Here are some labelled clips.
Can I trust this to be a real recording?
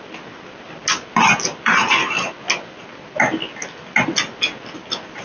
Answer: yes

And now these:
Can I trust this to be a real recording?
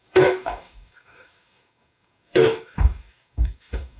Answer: no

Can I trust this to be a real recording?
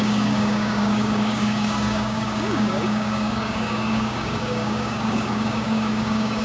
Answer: no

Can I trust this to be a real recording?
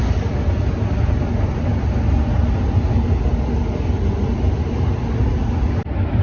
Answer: yes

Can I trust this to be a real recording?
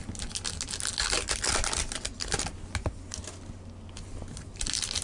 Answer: yes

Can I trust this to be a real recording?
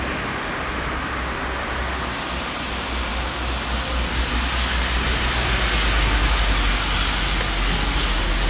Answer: yes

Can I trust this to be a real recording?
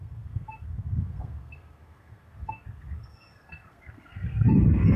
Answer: no